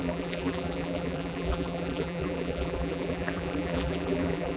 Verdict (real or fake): fake